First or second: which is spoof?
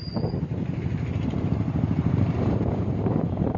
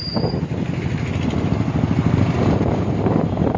first